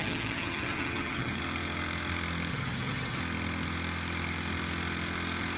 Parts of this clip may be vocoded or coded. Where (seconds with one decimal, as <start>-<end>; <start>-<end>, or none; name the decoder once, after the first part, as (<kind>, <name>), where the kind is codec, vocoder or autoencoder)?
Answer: 0.0-1.4 (vocoder, HiFi-GAN); 2.5-3.2